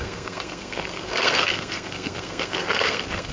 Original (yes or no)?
no